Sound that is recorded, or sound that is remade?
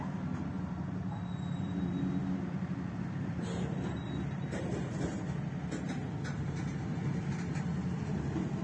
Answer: recorded